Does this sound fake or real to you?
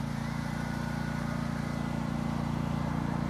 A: fake